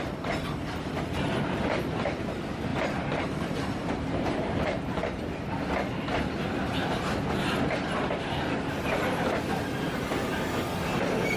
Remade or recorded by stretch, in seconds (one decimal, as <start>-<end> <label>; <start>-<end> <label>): 0.0-2.7 recorded; 2.7-5.2 remade; 5.2-11.4 recorded